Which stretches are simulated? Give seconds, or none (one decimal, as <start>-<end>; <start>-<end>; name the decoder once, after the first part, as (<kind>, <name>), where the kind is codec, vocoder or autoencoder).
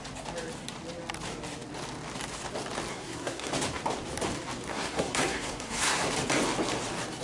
2.9-3.5 (codec, SNAC); 4.7-6.1